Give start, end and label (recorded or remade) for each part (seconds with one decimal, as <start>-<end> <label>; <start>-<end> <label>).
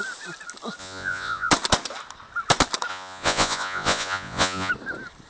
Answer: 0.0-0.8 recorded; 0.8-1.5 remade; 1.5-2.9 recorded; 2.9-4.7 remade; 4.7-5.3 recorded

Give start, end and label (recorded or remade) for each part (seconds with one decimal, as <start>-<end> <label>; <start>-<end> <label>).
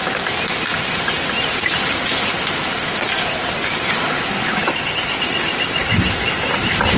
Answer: 0.0-7.0 recorded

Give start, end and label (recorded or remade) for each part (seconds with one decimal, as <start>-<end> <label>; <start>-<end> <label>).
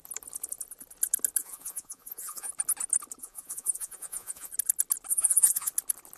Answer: 0.0-1.4 recorded; 1.4-2.5 remade; 2.5-3.2 recorded; 3.2-4.5 remade; 4.5-5.1 recorded; 5.1-5.7 remade; 5.7-6.2 recorded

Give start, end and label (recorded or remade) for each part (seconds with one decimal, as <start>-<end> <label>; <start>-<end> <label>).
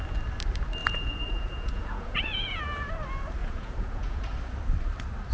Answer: 0.0-0.8 recorded; 0.8-2.6 remade; 2.6-3.4 recorded; 3.4-4.2 remade; 4.2-5.3 recorded